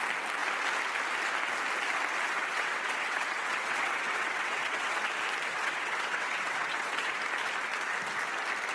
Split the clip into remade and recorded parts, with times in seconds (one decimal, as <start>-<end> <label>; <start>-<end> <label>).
0.0-2.3 recorded; 2.3-5.1 remade; 5.1-5.5 recorded; 5.5-7.1 remade; 7.1-8.7 recorded